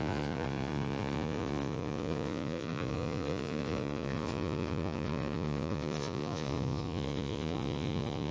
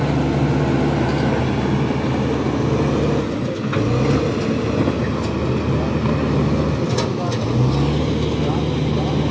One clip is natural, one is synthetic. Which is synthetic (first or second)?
first